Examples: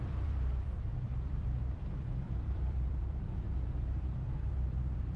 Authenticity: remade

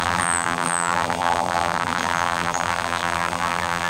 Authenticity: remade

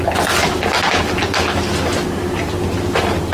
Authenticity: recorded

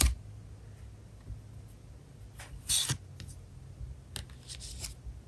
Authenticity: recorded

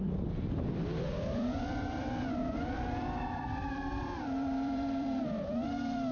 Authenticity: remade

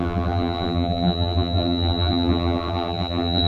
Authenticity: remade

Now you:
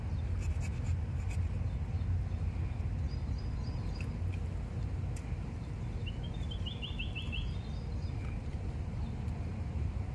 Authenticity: recorded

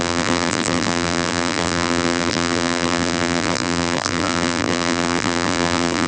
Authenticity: remade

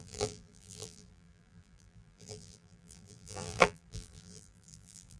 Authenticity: remade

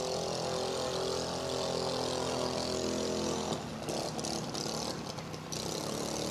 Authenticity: recorded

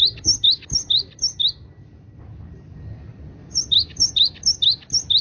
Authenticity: recorded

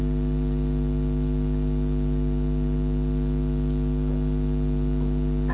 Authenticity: recorded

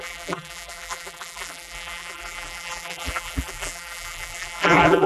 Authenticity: remade